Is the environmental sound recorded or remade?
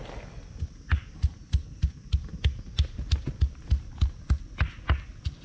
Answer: recorded